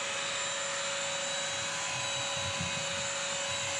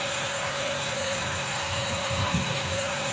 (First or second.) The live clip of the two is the first